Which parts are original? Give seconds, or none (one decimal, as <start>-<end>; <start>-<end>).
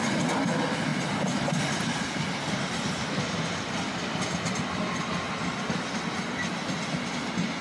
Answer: 0.0-7.6